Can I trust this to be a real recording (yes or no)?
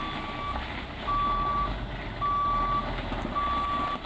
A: yes